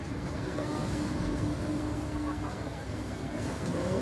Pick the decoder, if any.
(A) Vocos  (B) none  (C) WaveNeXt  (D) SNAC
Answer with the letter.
D